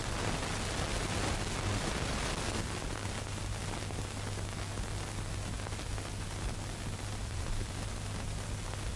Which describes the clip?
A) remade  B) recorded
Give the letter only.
B